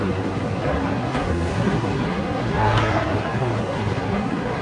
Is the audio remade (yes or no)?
yes